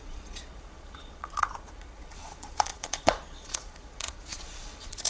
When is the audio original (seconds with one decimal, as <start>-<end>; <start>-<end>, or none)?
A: none